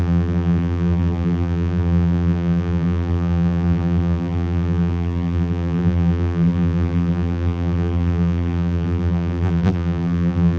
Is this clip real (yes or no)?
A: no